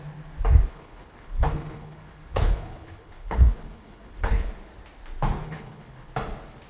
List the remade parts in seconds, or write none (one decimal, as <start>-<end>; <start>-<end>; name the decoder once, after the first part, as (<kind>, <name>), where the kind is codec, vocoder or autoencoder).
0.7-4.5 (codec, HILCodec); 5.4-6.1